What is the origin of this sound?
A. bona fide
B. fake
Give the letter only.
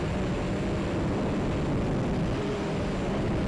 A